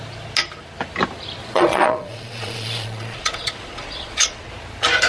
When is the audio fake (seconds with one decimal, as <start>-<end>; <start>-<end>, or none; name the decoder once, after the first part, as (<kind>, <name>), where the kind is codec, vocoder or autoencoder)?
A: 1.4-4.5 (vocoder, Vocos)